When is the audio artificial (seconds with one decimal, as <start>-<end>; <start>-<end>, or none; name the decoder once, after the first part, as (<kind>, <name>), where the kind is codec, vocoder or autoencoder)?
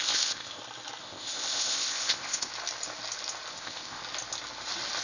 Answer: 0.0-0.6 (codec, ZipCodec); 1.0-2.5; 3.5-4.0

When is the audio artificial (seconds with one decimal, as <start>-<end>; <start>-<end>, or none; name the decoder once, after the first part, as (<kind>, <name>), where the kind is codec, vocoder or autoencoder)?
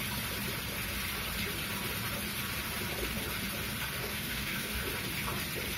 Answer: 4.0-4.8 (codec, DAC)